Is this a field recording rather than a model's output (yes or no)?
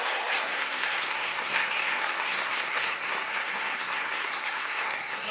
no